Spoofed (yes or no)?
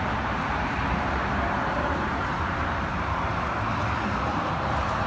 yes